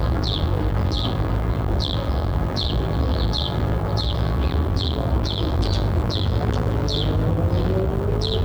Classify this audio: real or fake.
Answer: fake